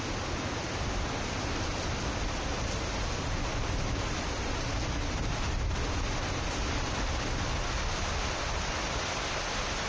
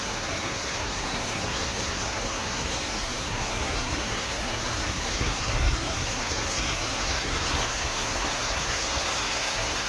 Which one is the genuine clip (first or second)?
first